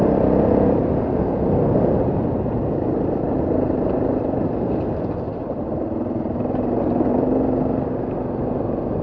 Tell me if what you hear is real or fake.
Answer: real